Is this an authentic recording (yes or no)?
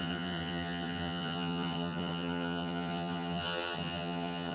no